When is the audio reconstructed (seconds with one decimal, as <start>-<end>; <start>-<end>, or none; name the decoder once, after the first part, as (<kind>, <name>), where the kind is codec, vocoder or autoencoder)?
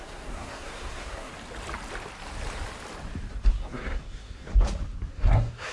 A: 0.0-1.3 (codec, SNAC); 3.5-4.5; 5.1-5.7